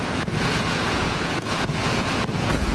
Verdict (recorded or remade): remade